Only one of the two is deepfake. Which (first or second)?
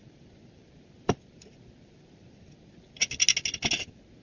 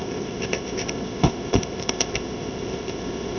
second